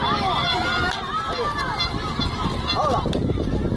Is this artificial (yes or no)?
no